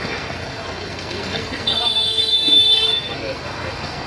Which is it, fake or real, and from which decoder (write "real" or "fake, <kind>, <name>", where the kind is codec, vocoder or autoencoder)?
fake, codec, SNAC